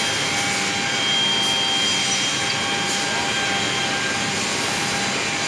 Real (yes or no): yes